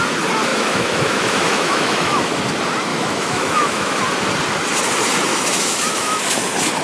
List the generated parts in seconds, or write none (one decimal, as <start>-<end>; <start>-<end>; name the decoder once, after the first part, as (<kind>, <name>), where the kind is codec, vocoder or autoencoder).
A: 0.5-2.4 (autoencoder, DAC-VAE); 2.9-4.0; 5.3-6.2